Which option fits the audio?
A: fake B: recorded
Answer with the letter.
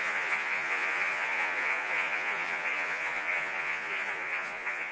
A